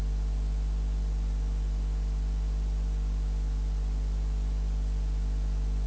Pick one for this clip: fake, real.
real